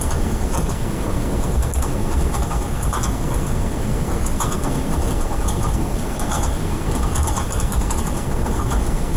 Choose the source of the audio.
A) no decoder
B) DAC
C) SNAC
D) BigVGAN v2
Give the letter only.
C